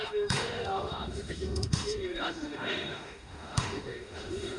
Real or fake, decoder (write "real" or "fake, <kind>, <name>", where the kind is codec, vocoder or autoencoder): fake, autoencoder, DAC-VAE